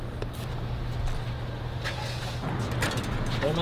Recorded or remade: recorded